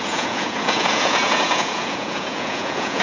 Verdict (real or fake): fake